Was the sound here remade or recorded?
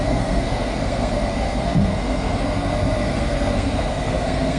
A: remade